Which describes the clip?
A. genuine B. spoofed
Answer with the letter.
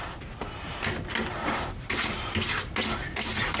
A